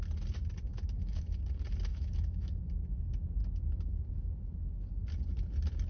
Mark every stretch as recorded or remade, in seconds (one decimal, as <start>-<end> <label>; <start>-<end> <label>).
0.0-0.7 recorded; 0.7-1.4 remade; 1.4-1.9 recorded; 1.9-2.6 remade; 2.6-5.9 recorded